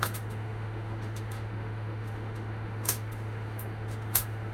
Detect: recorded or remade remade